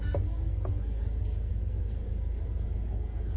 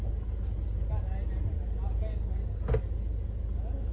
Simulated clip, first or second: first